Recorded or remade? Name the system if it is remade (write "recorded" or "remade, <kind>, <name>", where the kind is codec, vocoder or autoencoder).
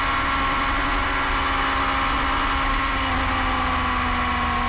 recorded